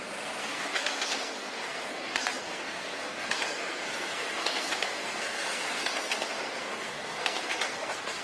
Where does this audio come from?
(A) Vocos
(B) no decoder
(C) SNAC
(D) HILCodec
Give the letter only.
C